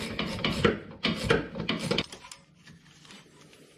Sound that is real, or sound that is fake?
real